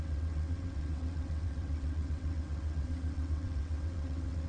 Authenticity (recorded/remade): remade